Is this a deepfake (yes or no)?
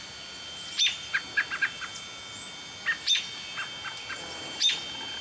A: no